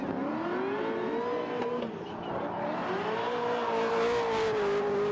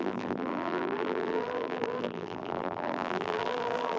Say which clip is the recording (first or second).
first